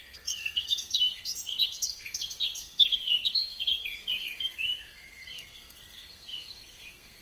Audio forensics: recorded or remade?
remade